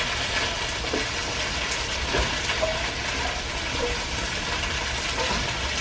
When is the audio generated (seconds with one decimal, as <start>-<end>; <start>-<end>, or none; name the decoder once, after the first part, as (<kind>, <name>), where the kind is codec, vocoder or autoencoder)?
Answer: none